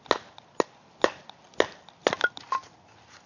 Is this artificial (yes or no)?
no